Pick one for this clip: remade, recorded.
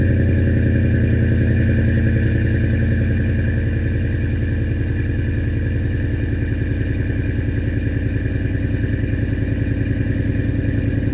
recorded